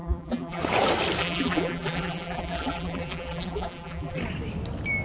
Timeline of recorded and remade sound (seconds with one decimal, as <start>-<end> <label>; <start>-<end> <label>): 0.0-0.6 remade; 0.6-1.2 recorded; 1.2-4.2 remade; 4.2-5.0 recorded